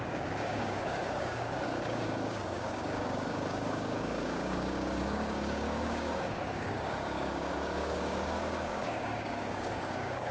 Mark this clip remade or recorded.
remade